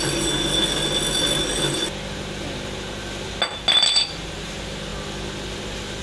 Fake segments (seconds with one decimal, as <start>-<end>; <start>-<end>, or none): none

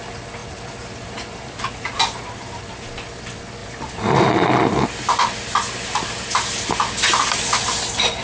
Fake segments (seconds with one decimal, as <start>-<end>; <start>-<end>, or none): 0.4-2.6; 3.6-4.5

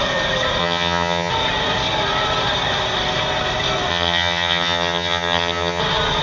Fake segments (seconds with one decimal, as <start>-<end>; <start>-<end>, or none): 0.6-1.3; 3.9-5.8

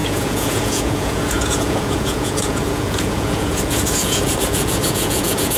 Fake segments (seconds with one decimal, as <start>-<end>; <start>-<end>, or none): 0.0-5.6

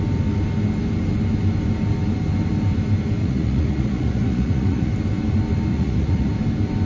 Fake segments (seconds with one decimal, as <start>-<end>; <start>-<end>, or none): 3.2-4.9; 5.7-6.3

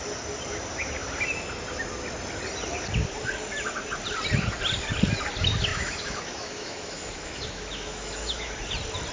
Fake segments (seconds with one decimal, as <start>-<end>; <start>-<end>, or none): 5.7-8.5

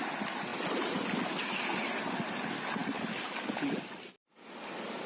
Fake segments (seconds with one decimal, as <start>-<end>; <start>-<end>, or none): none

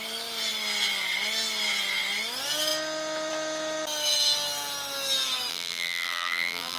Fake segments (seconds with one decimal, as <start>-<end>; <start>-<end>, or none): 5.5-6.8